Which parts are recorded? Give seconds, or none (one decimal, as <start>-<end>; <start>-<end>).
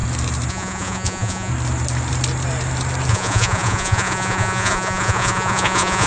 0.0-0.5; 1.5-3.1